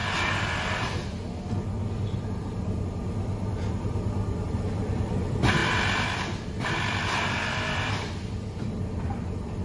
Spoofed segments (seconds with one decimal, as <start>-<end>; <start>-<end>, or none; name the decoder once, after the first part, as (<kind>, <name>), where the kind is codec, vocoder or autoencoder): 4.5-9.6 (vocoder, BigVGAN v2)